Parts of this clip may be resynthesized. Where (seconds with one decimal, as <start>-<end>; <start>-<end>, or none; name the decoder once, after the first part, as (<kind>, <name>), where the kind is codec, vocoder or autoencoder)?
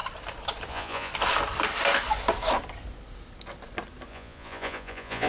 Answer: 0.7-1.1 (vocoder, Vocos); 4.1-5.3